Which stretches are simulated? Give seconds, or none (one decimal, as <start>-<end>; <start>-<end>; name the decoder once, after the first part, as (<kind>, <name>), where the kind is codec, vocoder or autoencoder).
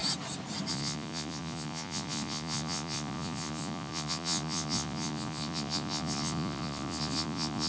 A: 0.7-7.7 (vocoder, Vocos)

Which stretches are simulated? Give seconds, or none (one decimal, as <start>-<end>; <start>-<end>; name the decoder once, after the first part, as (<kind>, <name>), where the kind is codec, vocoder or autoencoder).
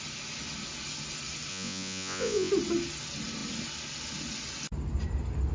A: 1.5-2.5 (vocoder, Vocos)